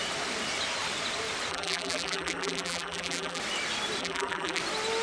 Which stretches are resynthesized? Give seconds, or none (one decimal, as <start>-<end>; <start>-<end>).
1.5-3.4; 4.0-4.6